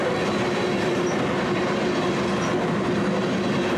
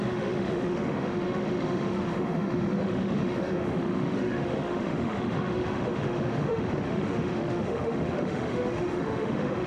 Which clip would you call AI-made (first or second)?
second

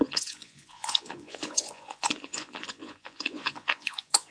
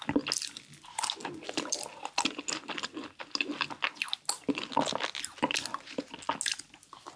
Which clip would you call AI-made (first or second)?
first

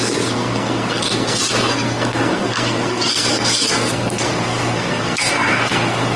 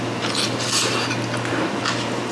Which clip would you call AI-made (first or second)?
first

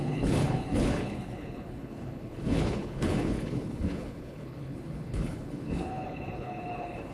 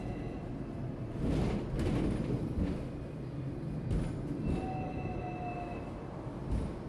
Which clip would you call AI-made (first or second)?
first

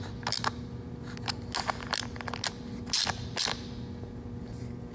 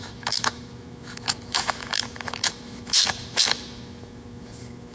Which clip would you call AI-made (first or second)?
second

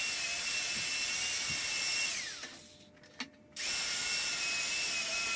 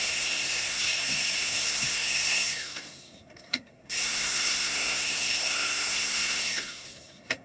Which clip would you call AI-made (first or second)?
second